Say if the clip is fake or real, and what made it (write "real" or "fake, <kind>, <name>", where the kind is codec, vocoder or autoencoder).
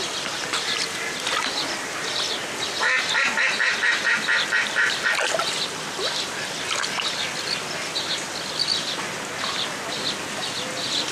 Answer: real